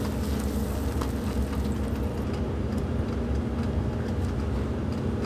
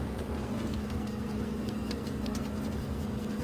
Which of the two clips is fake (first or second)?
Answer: second